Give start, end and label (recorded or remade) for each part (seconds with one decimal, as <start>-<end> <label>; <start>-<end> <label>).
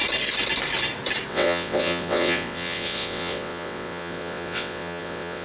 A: 0.0-1.3 recorded; 1.3-5.4 remade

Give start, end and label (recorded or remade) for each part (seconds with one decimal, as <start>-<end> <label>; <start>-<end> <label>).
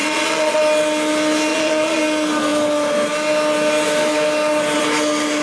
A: 0.0-0.6 remade; 0.6-1.5 recorded; 1.5-2.0 remade; 2.0-5.4 recorded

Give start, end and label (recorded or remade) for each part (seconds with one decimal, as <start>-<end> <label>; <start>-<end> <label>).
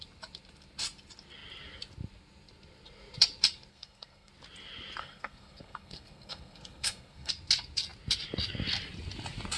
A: 0.0-3.7 recorded; 3.7-4.3 remade; 4.3-5.0 recorded; 5.0-7.3 remade; 7.3-9.6 recorded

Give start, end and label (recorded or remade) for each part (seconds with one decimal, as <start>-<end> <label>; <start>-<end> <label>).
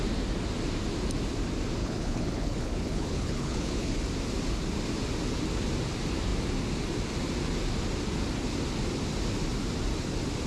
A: 0.0-1.8 recorded; 1.8-4.0 remade; 4.0-10.5 recorded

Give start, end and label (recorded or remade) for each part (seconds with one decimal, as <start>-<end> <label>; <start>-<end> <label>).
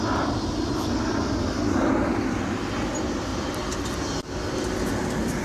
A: 0.0-5.4 recorded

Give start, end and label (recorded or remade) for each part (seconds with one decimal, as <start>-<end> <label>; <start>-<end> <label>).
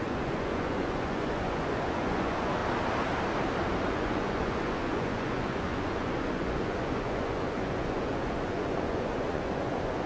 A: 0.0-2.6 remade; 2.6-3.8 recorded; 3.8-10.1 remade